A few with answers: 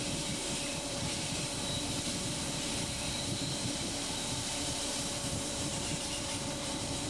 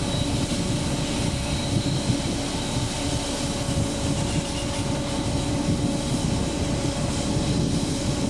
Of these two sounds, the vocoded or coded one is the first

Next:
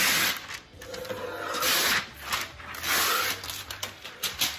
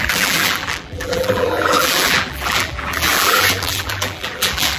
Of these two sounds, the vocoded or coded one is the second